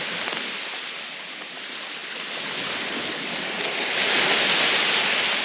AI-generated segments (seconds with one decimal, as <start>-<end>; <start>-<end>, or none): none